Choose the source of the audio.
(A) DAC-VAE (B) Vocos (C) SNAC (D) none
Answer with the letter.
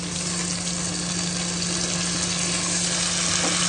D